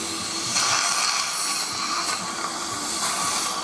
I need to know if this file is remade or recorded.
recorded